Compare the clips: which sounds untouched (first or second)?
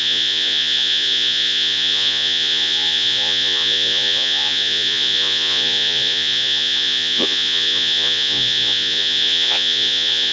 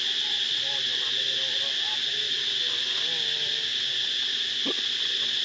second